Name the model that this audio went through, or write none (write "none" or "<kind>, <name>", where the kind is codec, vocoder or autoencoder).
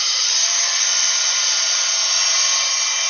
none